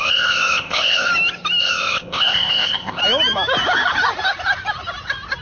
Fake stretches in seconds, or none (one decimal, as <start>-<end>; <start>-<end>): 0.0-1.1; 1.6-3.0